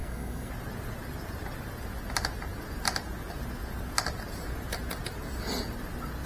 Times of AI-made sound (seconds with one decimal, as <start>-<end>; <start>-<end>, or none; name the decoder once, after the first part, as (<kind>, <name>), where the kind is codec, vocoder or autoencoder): 0.0-0.5 (codec, SNAC)